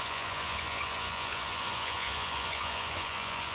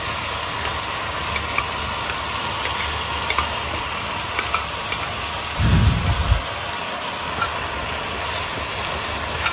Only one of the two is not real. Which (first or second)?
first